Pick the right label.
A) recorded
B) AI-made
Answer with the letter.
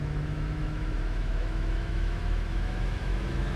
B